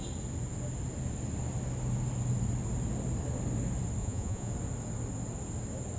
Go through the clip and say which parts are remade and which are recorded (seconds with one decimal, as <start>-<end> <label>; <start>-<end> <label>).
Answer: 0.0-4.0 recorded; 4.0-4.5 remade; 4.5-6.0 recorded

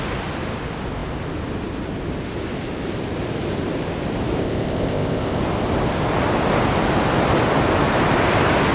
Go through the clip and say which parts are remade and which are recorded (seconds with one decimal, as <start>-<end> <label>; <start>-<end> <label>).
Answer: 0.0-4.4 recorded; 4.4-5.4 remade; 5.4-8.7 recorded

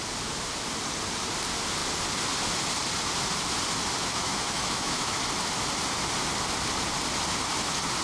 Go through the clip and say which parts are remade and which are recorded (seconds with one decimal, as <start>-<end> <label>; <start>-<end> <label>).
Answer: 0.0-4.0 recorded; 4.0-5.2 remade; 5.2-8.0 recorded